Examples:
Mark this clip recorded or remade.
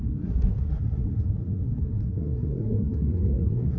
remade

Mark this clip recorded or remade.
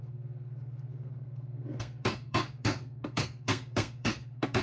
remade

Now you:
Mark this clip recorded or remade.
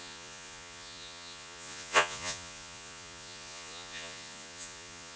remade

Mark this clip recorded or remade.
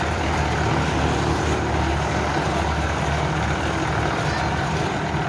recorded